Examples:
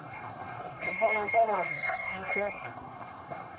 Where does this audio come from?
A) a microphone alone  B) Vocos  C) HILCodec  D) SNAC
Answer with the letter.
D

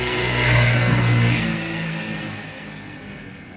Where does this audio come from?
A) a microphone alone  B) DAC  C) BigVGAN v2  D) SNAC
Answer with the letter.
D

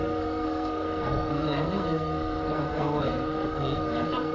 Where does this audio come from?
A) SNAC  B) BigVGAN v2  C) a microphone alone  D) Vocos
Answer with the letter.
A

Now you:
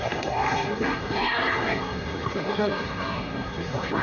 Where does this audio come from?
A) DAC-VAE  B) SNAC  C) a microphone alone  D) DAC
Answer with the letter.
B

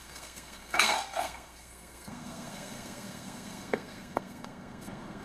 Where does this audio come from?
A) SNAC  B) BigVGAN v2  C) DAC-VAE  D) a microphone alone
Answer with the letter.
A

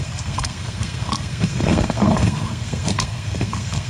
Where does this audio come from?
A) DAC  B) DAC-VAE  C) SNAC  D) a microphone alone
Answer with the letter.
C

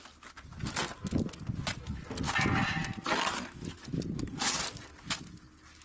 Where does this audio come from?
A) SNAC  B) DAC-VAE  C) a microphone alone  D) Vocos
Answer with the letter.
C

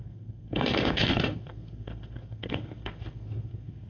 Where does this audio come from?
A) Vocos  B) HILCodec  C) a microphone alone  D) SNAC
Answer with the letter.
D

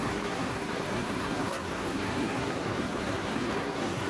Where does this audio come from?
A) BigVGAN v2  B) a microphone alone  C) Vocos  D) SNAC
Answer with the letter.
D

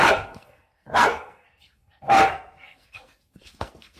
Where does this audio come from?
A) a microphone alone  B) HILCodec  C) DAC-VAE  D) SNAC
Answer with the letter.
D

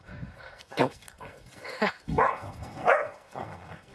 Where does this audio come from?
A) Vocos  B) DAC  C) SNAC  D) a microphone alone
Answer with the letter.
C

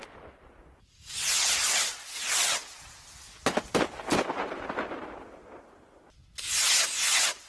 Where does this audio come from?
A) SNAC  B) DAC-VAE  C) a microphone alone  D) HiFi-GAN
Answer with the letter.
C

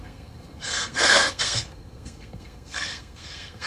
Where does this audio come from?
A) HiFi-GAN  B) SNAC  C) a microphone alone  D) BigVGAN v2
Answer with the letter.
B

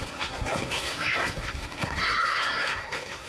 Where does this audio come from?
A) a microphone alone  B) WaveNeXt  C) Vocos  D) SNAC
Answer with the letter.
D